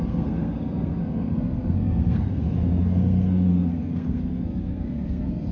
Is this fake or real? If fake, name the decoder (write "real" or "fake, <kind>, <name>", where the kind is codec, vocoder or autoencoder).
fake, codec, SNAC